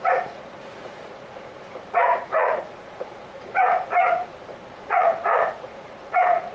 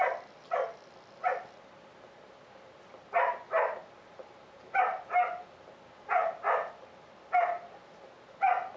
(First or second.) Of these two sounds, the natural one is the second